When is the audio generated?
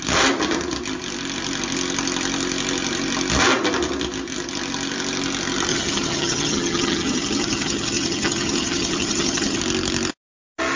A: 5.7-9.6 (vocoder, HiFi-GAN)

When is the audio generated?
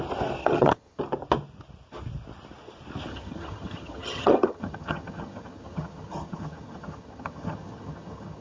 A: 0.4-1.0 (vocoder, HiFi-GAN); 3.1-8.4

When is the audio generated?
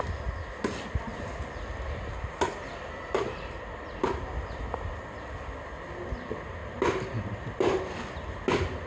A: none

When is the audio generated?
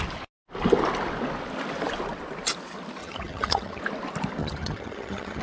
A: 3.0-3.8 (vocoder, HiFi-GAN); 4.4-5.4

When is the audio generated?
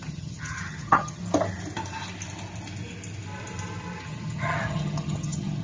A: 0.0-1.2 (vocoder, HiFi-GAN); 4.0-5.6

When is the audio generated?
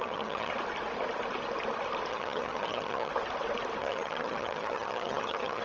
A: 0.0-0.5 (vocoder, HiFi-GAN); 2.1-3.1; 3.8-5.6